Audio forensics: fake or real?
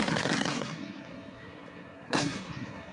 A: fake